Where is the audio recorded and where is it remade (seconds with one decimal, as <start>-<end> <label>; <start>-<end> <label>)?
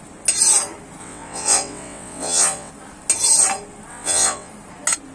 0.0-1.0 recorded; 1.0-2.7 remade; 2.7-3.9 recorded; 3.9-4.5 remade; 4.5-5.1 recorded